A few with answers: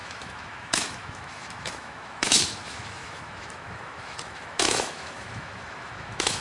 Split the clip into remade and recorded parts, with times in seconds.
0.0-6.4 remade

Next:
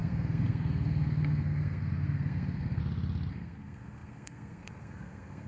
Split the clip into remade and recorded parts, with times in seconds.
0.0-2.8 remade; 2.8-3.3 recorded; 3.3-5.5 remade

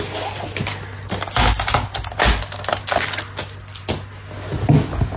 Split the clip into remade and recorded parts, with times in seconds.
0.0-5.2 recorded